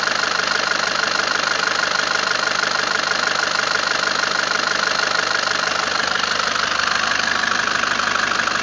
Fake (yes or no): yes